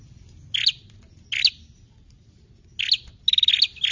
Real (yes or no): yes